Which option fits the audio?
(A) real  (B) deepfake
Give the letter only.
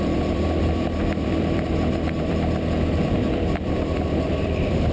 B